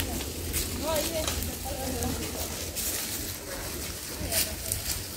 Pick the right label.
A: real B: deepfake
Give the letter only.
A